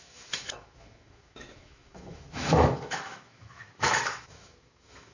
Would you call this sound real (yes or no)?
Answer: no